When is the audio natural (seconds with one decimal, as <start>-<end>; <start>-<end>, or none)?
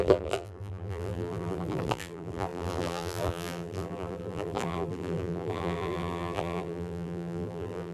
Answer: none